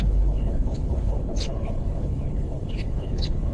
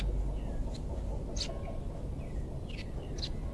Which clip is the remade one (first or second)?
first